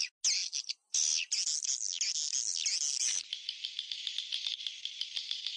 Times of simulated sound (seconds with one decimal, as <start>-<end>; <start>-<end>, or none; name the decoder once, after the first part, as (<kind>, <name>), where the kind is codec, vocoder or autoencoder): none